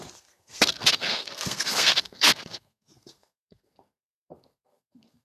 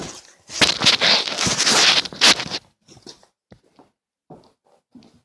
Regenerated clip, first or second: first